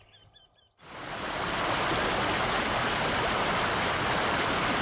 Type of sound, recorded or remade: recorded